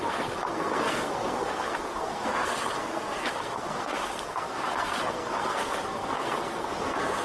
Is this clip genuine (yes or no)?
no